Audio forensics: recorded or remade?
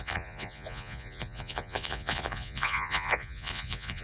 remade